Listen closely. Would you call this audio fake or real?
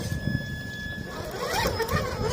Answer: real